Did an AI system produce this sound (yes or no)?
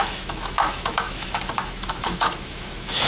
yes